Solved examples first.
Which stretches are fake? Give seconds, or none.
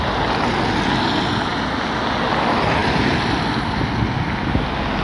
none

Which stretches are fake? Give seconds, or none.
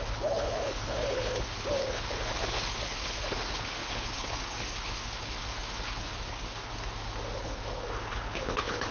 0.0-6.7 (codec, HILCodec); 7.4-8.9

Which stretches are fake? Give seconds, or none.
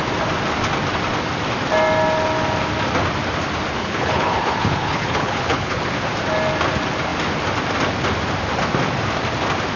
3.8-5.9 (codec, HILCodec)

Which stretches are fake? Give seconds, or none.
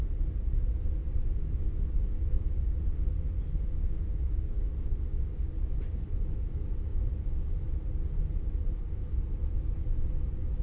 none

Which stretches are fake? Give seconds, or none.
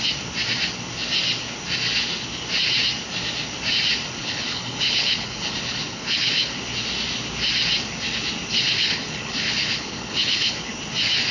4.2-6.6 (codec, HILCodec); 8.5-10.7